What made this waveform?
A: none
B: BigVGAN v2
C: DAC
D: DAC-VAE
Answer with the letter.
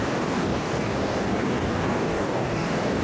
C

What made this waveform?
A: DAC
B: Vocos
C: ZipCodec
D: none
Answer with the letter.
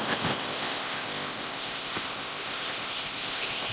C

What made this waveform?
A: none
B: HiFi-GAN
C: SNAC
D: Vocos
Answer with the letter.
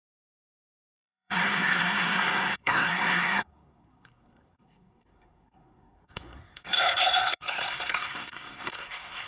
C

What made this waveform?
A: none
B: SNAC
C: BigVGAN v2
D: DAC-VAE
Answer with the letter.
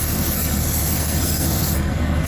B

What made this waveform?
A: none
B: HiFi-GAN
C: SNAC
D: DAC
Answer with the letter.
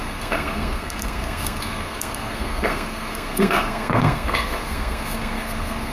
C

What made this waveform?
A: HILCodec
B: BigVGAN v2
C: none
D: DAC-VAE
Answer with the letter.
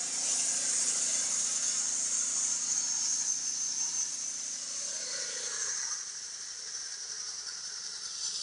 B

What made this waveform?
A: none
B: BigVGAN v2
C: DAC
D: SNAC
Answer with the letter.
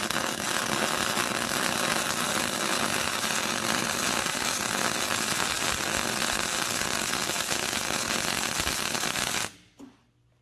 A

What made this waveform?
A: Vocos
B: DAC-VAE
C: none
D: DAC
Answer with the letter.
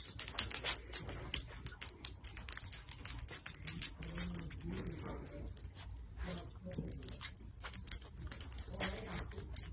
C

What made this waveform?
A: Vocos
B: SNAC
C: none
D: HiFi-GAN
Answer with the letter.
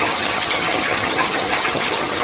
D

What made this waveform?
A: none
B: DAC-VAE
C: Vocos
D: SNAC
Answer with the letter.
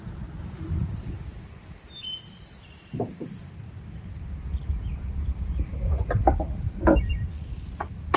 A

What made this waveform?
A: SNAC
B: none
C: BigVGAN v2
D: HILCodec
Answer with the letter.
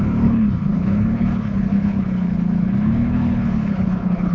D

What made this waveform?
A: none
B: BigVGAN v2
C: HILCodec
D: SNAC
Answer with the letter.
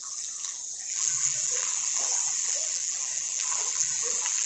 B